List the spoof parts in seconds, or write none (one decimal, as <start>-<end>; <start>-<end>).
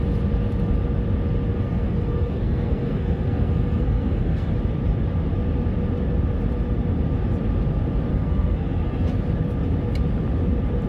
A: 1.5-4.5; 8.1-9.1